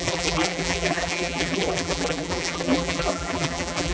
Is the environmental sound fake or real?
fake